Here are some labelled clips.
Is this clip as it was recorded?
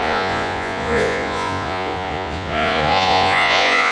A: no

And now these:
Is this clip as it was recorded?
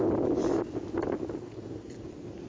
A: yes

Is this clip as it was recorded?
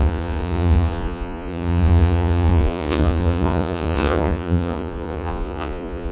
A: no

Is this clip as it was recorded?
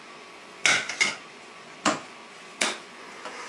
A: no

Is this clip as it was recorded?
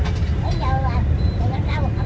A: yes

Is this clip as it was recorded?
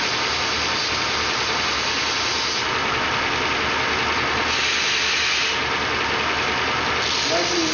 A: yes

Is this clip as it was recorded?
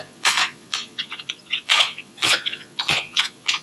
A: no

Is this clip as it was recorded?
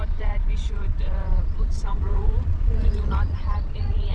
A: no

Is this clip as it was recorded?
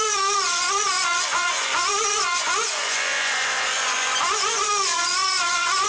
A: no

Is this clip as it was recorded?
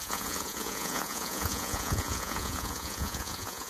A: no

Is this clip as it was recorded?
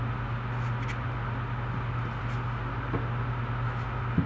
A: yes